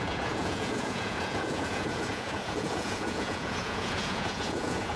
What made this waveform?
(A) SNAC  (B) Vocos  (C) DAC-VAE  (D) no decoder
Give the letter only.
B